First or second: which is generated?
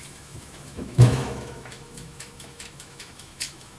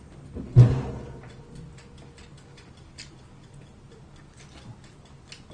first